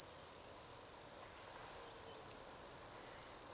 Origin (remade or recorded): recorded